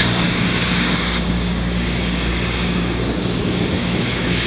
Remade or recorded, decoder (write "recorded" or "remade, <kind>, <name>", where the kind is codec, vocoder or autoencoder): remade, codec, DAC